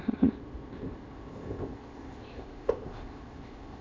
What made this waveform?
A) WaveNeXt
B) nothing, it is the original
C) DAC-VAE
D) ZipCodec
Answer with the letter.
D